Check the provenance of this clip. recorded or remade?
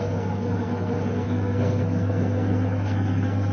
remade